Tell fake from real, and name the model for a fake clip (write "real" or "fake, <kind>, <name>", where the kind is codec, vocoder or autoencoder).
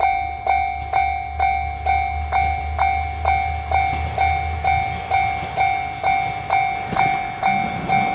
real